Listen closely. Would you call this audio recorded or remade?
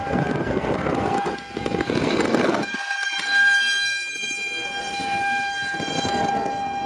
remade